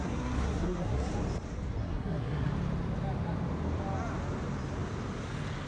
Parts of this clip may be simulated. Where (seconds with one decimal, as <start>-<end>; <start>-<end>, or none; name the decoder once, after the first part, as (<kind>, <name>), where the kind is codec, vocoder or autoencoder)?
0.0-1.1 (codec, SNAC); 1.8-2.5